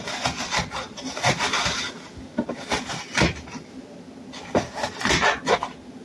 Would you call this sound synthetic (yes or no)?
no